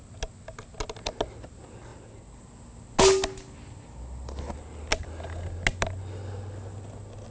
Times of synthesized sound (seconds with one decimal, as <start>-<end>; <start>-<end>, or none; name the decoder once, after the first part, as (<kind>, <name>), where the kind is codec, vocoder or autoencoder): none